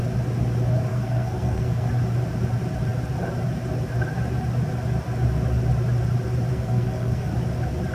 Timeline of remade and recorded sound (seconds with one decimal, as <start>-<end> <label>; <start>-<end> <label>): 0.0-0.9 recorded; 0.9-1.9 remade; 1.9-6.5 recorded; 6.5-7.3 remade; 7.3-7.9 recorded